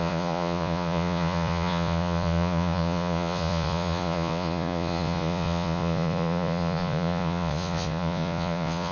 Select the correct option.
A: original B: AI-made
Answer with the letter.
B